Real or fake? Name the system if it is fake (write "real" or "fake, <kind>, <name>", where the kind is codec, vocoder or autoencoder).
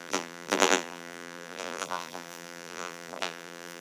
fake, vocoder, BigVGAN v2